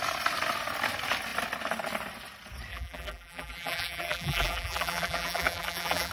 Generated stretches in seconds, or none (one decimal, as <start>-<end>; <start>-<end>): 2.7-6.1